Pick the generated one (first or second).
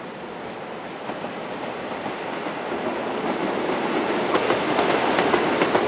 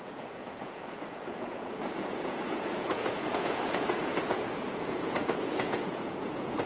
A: second